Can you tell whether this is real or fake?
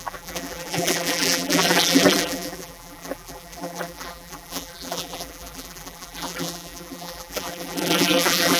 fake